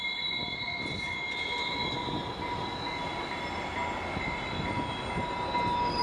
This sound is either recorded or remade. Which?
recorded